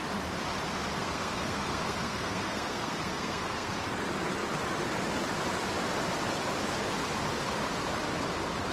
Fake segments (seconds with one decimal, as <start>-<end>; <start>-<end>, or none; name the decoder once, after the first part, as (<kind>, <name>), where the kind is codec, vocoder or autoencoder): 1.0-3.7 (codec, SNAC)